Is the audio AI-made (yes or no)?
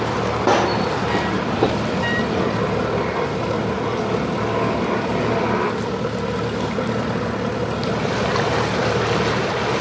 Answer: no